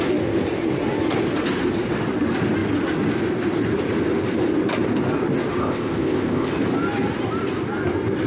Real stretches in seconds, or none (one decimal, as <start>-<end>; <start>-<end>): 0.0-5.6; 6.5-8.3